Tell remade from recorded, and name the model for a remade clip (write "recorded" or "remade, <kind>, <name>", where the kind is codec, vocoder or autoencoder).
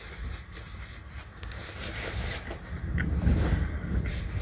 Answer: recorded